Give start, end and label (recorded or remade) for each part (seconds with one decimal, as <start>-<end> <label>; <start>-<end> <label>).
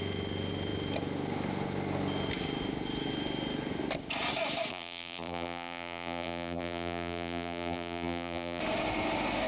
0.0-4.7 recorded; 4.7-8.6 remade; 8.6-9.5 recorded